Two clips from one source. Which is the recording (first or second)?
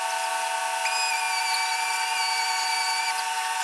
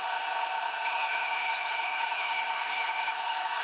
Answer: first